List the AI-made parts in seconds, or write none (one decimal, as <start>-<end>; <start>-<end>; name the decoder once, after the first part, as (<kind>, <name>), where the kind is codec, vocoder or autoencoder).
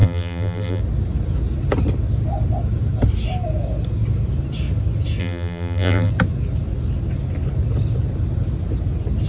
0.0-0.8 (vocoder, BigVGAN v2); 5.2-6.1